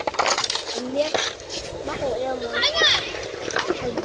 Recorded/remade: recorded